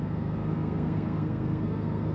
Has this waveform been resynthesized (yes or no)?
yes